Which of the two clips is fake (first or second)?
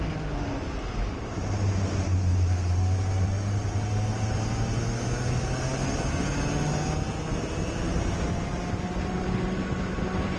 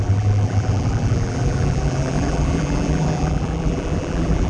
second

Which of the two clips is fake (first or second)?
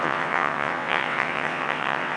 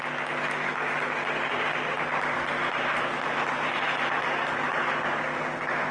first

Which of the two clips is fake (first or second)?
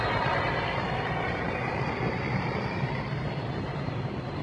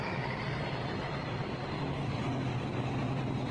first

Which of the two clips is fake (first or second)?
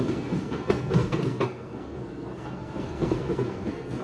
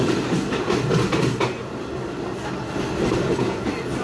first